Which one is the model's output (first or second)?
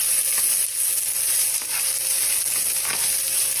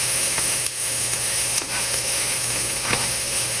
second